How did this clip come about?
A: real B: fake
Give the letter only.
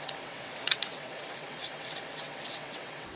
B